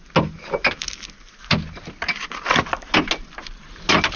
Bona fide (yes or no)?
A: yes